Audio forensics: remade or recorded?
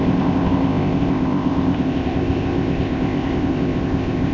remade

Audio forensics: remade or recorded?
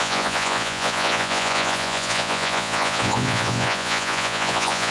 remade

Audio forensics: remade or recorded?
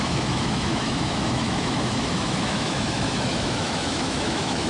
remade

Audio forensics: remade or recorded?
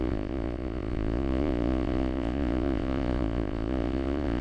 remade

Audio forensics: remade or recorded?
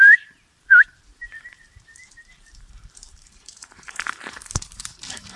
remade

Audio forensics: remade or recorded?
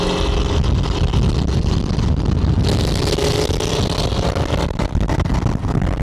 recorded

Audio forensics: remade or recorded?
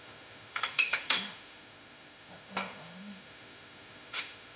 remade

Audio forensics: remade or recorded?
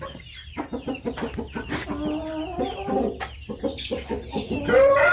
recorded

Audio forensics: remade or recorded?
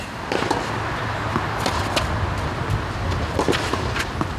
recorded